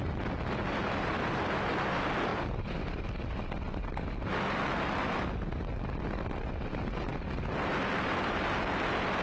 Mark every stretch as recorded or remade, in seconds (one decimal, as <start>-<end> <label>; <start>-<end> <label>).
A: 0.0-2.3 recorded; 2.3-3.0 remade; 3.0-9.2 recorded